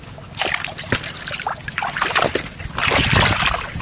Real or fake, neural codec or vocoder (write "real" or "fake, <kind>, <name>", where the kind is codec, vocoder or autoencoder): real